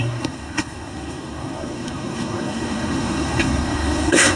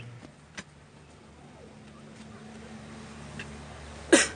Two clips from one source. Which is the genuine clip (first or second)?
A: second